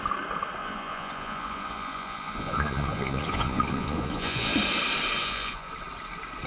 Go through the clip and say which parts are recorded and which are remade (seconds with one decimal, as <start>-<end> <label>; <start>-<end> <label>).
0.0-0.6 recorded; 0.6-4.5 remade; 4.5-5.2 recorded; 5.2-5.7 remade; 5.7-6.5 recorded